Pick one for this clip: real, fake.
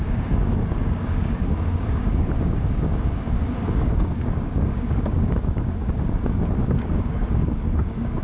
fake